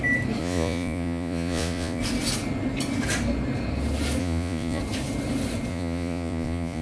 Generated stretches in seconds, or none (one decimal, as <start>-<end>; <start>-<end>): 0.4-2.0; 4.2-4.8; 5.7-6.8